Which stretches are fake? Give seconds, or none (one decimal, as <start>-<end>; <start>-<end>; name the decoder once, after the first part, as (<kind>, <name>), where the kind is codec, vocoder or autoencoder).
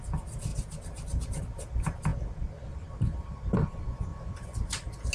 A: 2.1-3.4 (vocoder, BigVGAN v2); 4.1-5.1